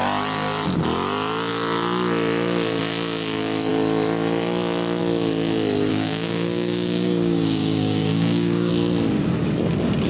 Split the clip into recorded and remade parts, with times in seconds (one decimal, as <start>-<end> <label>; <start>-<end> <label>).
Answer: 0.0-5.9 recorded; 5.9-8.7 remade; 8.7-10.1 recorded

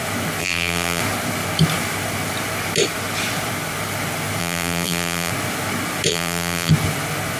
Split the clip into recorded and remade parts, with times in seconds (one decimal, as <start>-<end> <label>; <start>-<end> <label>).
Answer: 0.0-0.4 recorded; 0.4-1.0 remade; 1.0-4.4 recorded; 4.4-5.3 remade; 5.3-6.1 recorded; 6.1-6.7 remade; 6.7-7.4 recorded

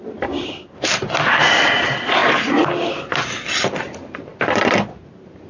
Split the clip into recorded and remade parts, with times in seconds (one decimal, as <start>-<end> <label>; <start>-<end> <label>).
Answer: 0.0-5.5 recorded

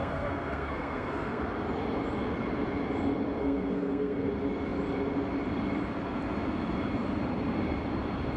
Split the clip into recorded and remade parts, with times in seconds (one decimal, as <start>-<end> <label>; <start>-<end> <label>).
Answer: 0.0-1.4 remade; 1.4-3.4 recorded; 3.4-4.3 remade; 4.3-8.4 recorded

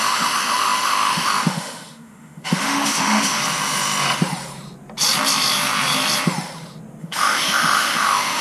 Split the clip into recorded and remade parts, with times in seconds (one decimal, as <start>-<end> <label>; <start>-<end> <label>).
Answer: 0.0-3.4 remade; 3.4-7.0 recorded; 7.0-8.4 remade